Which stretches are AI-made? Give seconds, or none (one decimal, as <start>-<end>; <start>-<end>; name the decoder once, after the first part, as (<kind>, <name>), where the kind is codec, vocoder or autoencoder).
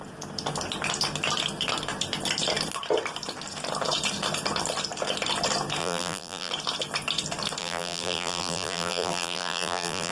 5.8-6.5 (vocoder, BigVGAN v2); 7.6-10.1